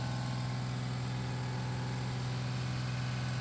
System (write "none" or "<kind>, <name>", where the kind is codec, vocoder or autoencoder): none